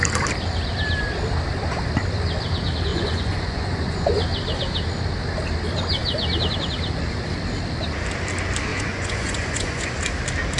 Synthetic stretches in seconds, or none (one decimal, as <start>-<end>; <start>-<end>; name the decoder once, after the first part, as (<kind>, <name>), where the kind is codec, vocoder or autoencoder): 2.9-4.1 (vocoder, Vocos); 8.7-9.9